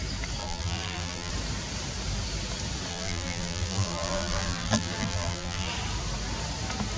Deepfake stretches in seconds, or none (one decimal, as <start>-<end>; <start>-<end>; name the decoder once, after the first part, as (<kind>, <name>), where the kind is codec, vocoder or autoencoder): 0.4-1.3 (vocoder, BigVGAN v2); 2.9-5.7